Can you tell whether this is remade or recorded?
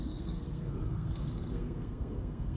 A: remade